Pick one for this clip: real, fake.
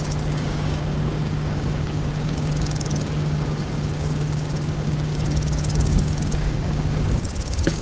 fake